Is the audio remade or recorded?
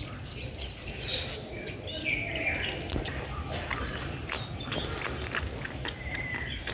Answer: recorded